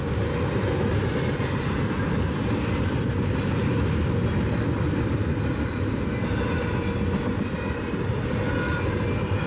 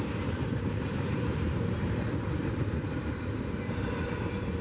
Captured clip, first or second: first